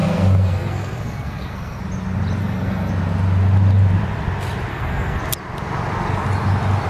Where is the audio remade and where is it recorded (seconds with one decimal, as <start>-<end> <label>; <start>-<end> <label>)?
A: 0.0-1.8 remade; 1.8-2.4 recorded; 2.4-2.9 remade; 2.9-4.7 recorded; 4.7-5.2 remade; 5.2-6.9 recorded